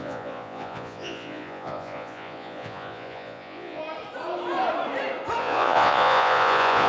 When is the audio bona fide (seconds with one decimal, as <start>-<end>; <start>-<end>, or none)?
3.8-5.4